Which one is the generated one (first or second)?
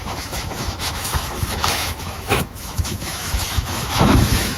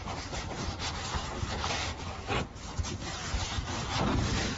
first